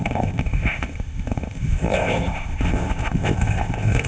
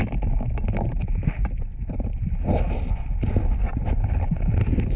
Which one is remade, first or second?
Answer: first